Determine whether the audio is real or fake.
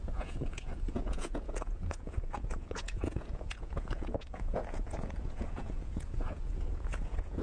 fake